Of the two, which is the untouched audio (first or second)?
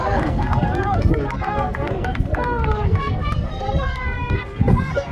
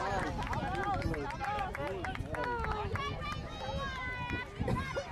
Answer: second